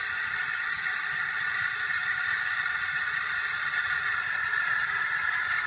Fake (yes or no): no